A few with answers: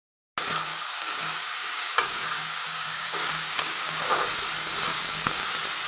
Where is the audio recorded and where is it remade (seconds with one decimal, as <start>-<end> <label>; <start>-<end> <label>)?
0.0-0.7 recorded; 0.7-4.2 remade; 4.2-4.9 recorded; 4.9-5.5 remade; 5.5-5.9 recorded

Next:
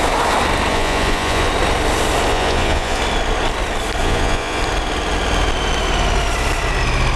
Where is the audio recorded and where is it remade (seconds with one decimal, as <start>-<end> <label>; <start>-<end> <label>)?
0.0-0.7 recorded; 0.7-1.5 remade; 1.5-2.3 recorded; 2.3-3.0 remade; 3.0-4.0 recorded; 4.0-4.6 remade; 4.6-7.2 recorded

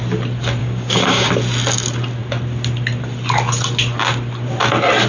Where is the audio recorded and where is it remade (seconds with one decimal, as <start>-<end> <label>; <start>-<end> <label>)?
0.0-0.6 recorded; 0.6-1.3 remade; 1.3-5.1 recorded

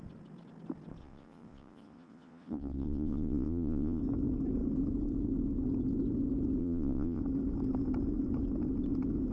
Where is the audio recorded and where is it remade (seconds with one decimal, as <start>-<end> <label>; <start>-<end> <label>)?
0.0-1.0 recorded; 1.0-4.0 remade; 4.0-6.6 recorded; 6.6-7.2 remade; 7.2-9.3 recorded